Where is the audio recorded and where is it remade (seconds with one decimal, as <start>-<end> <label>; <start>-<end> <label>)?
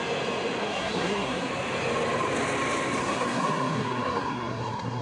0.0-0.6 recorded; 0.6-1.5 remade; 1.5-3.0 recorded; 3.0-5.0 remade